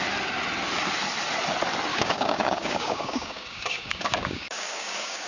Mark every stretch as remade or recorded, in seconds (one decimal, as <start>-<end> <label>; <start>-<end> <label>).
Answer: 0.0-1.9 recorded; 1.9-5.3 remade